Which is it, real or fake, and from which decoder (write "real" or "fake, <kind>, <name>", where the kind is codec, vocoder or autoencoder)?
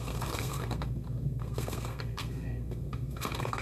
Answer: fake, codec, SNAC